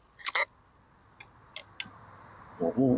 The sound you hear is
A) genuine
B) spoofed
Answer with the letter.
A